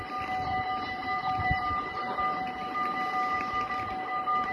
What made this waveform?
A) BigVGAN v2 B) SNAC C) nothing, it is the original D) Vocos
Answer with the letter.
A